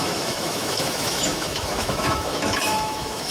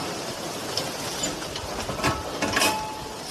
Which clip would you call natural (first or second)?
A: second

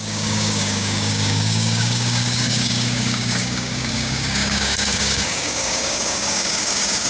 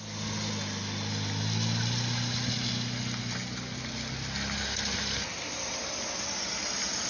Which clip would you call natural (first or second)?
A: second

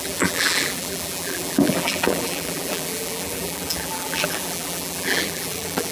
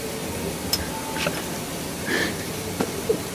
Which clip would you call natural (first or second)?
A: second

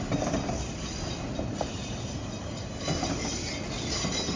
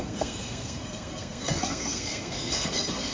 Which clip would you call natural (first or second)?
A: first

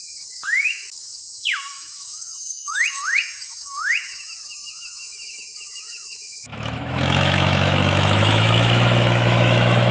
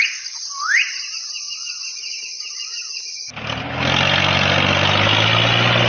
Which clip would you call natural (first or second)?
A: second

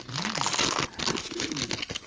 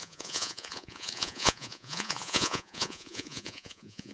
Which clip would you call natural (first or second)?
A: first